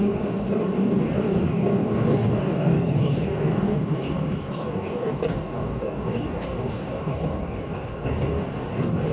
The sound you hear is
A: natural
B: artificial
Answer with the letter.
B